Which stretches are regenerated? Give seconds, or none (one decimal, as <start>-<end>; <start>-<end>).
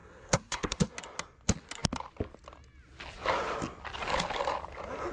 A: 0.0-0.9